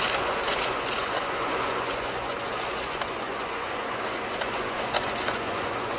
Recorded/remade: remade